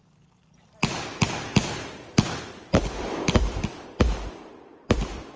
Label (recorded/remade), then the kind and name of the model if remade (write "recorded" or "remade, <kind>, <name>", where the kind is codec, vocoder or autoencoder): remade, vocoder, BigVGAN v2